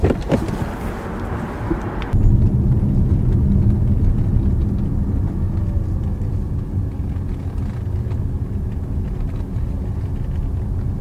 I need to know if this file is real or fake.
real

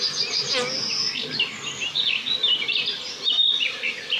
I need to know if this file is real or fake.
real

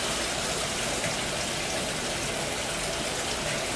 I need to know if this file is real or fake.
real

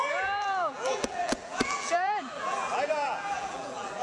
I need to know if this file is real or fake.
fake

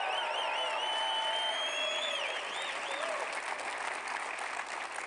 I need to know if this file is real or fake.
real